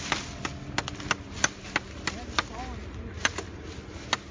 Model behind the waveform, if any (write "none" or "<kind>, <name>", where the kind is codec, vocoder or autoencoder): none